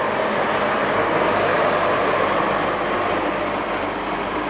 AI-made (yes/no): no